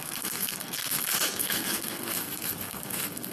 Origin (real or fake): fake